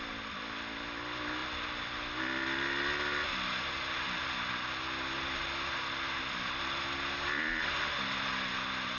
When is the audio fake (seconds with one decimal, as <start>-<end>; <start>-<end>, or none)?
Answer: none